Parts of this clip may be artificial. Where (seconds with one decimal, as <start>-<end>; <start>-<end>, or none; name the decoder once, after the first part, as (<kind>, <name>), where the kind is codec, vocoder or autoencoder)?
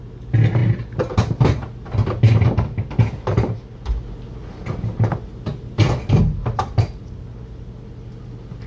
none